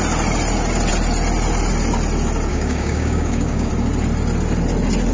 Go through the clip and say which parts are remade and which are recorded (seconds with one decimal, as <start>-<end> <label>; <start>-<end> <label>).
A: 0.0-2.5 recorded; 2.5-3.7 remade; 3.7-5.1 recorded